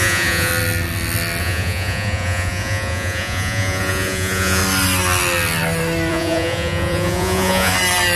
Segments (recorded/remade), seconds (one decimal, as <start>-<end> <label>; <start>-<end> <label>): 0.0-0.5 remade; 0.5-1.4 recorded; 1.4-4.6 remade; 4.6-6.1 recorded; 6.1-7.7 remade; 7.7-8.2 recorded